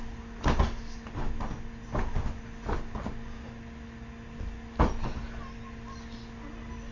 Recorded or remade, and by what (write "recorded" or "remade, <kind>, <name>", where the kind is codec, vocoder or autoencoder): recorded